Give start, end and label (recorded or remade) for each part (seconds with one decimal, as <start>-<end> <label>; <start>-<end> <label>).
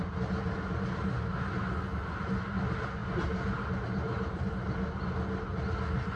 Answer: 0.0-3.0 recorded; 3.0-4.5 remade; 4.5-6.2 recorded